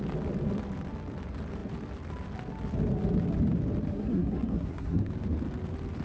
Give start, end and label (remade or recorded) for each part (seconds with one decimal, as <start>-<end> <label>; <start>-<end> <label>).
0.0-3.9 recorded; 3.9-5.1 remade; 5.1-6.0 recorded